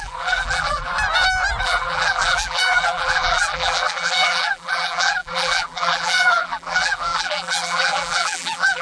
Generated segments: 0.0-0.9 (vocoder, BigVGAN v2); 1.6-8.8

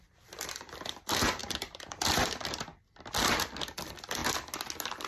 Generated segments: 0.0-2.7 (vocoder, BigVGAN v2); 3.6-4.2

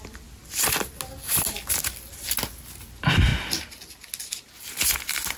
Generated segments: none

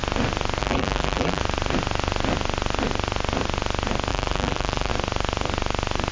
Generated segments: 0.6-1.4 (vocoder, BigVGAN v2); 4.1-4.9

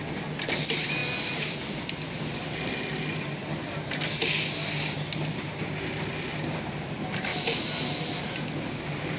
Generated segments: 7.3-8.3 (vocoder, BigVGAN v2)